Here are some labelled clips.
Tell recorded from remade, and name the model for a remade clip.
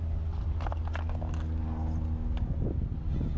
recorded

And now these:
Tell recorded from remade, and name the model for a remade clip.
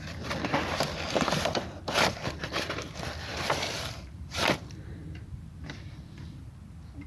remade, vocoder, BigVGAN v2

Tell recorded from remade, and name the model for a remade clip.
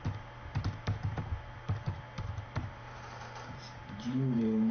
remade, vocoder, BigVGAN v2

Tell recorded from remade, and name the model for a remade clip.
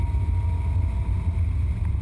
recorded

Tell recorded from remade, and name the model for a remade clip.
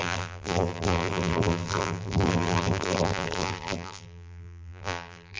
remade, vocoder, BigVGAN v2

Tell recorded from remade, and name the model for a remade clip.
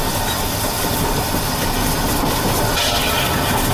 recorded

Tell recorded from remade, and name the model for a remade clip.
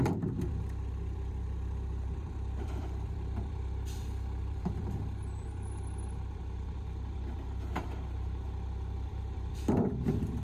remade, vocoder, BigVGAN v2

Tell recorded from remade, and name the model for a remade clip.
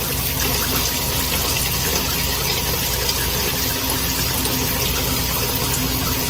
recorded